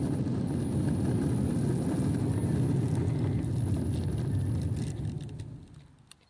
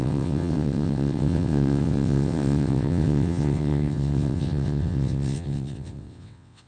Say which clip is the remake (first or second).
second